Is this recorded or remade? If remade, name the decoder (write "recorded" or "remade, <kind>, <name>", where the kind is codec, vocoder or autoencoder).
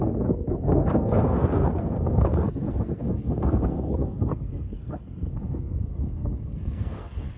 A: remade, codec, SNAC